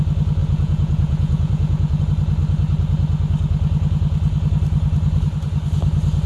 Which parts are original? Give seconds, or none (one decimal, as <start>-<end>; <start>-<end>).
0.0-0.4; 2.0-6.3